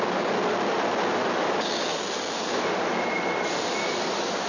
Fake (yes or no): no